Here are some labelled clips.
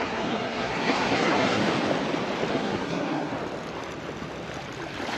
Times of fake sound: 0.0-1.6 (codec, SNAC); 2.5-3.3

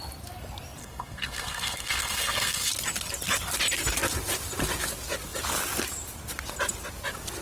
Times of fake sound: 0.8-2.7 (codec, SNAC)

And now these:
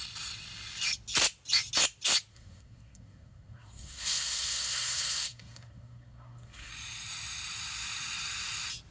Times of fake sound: 2.3-6.7 (codec, SNAC)

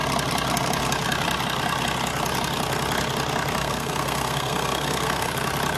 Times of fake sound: 3.6-5.3 (codec, SNAC)